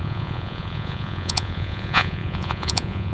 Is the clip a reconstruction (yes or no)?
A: yes